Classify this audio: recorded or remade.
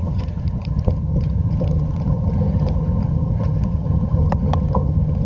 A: remade